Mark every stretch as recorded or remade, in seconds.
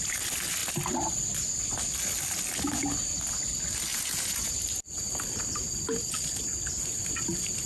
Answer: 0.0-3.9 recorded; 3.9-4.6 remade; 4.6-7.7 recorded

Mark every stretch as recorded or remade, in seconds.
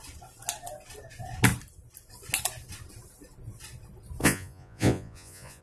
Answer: 0.0-4.2 recorded; 4.2-5.6 remade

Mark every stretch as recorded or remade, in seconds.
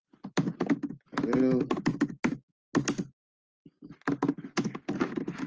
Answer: 0.0-5.5 recorded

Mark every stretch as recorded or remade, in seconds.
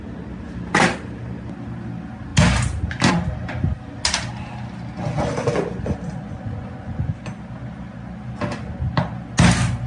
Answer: 0.0-6.1 recorded; 6.1-7.2 remade; 7.2-9.9 recorded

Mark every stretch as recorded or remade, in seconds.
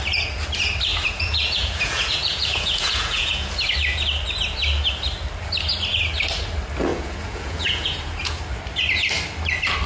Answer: 0.0-0.9 recorded; 0.9-3.5 remade; 3.5-6.9 recorded; 6.9-8.4 remade; 8.4-9.9 recorded